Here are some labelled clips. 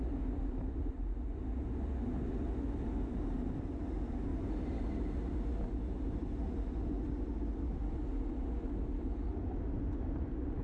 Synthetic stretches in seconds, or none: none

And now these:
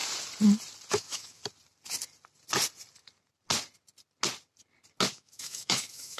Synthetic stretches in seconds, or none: 0.9-1.4 (autoencoder, DAC-VAE); 5.1-6.2

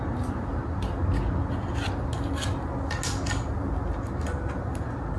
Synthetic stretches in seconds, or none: none

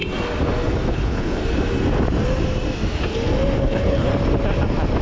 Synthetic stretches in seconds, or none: 0.9-1.4 (codec, HILCodec); 3.6-4.1

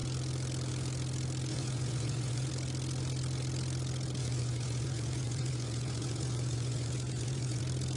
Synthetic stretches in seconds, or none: 1.5-2.5 (vocoder, Vocos); 4.2-7.6

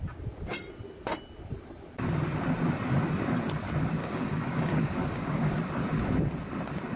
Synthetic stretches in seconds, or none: 4.0-5.5 (codec, DAC)

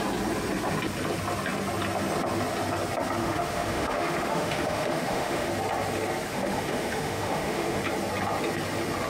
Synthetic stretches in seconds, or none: 3.2-5.5 (autoencoder, DAC-VAE); 6.3-7.8